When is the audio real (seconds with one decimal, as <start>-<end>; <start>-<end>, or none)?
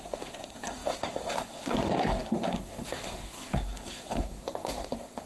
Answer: none